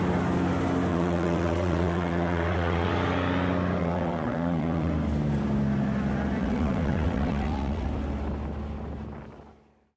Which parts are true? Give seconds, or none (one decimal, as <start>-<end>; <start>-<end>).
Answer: 0.0-0.9; 2.9-3.8; 4.9-6.4; 7.9-10.0